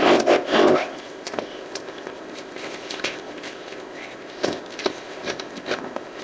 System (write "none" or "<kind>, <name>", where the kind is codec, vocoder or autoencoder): codec, ZipCodec